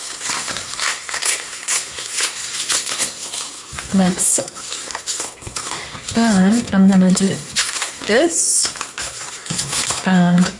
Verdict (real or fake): fake